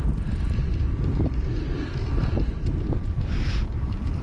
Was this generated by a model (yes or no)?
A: yes